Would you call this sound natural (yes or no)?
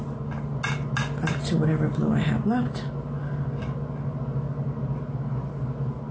yes